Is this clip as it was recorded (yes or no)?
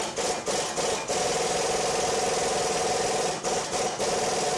yes